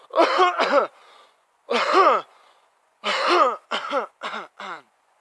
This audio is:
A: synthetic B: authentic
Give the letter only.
A